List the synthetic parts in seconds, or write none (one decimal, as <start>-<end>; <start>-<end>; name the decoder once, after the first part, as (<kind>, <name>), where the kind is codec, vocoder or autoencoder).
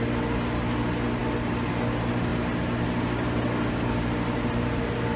none